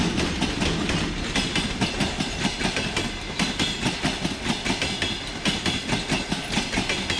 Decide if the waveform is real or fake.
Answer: real